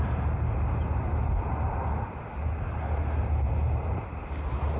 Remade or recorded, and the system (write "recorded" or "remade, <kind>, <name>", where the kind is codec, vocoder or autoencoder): recorded